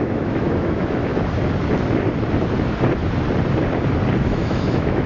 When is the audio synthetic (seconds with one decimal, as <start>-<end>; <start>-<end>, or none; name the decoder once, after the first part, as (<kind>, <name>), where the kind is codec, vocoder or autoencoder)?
0.0-1.1 (autoencoder, DAC-VAE); 4.2-5.1